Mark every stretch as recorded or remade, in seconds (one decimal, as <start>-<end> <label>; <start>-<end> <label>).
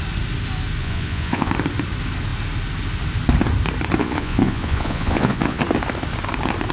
0.0-0.8 recorded; 0.8-1.5 remade; 1.5-4.0 recorded; 4.0-5.6 remade; 5.6-6.7 recorded